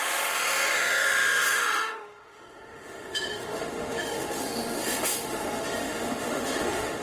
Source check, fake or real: fake